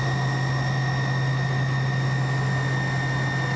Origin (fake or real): real